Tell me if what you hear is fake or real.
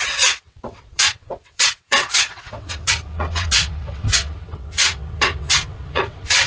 fake